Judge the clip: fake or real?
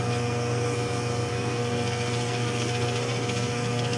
fake